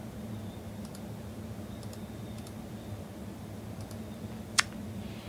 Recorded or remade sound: recorded